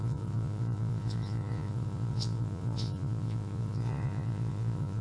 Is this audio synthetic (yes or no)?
yes